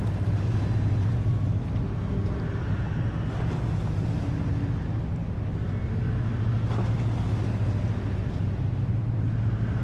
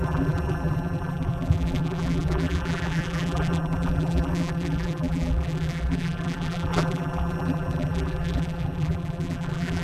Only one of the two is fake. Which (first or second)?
second